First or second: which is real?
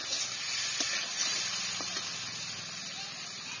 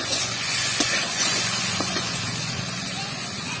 first